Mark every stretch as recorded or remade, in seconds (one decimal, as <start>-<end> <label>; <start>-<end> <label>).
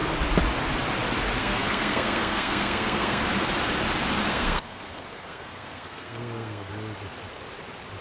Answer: 0.0-1.4 recorded; 1.4-3.2 remade; 3.2-4.3 recorded; 4.3-6.7 remade; 6.7-8.0 recorded